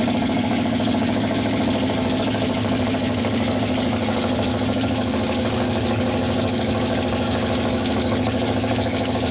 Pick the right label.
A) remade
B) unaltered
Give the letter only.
A